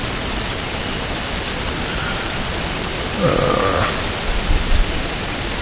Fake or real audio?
real